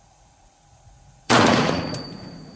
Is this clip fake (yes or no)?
yes